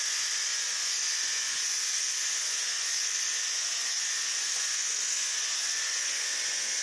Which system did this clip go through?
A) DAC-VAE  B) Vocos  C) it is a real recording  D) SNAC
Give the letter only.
B